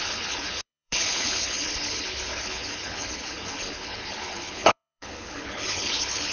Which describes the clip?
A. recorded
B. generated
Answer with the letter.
B